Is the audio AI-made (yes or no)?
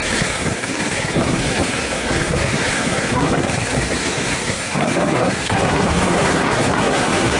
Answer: yes